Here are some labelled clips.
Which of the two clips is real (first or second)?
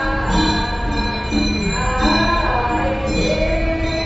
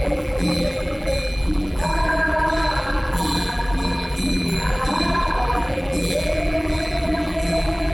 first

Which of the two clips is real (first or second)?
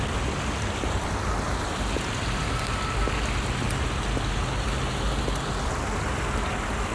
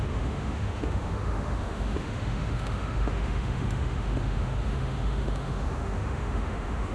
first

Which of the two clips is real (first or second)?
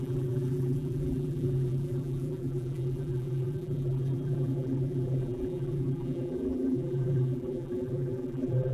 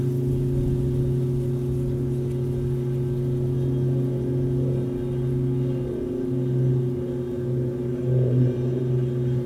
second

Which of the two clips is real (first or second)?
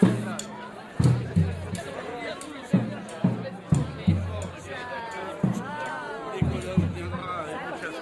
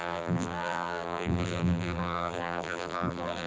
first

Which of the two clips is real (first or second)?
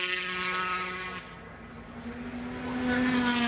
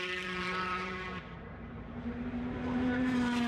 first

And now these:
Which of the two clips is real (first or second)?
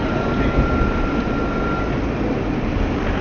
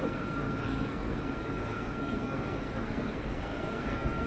first